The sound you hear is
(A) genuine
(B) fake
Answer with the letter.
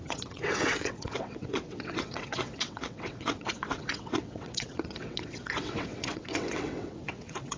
B